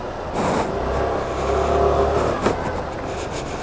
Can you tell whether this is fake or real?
real